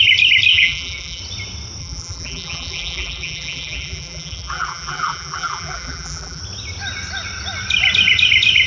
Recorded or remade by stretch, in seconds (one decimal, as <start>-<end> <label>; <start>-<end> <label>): 0.0-0.5 recorded; 0.5-1.2 remade; 1.2-1.8 recorded; 1.8-6.4 remade; 6.4-8.7 recorded